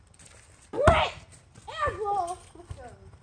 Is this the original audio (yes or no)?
yes